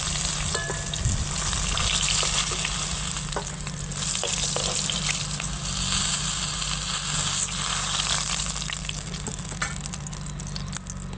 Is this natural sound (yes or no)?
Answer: yes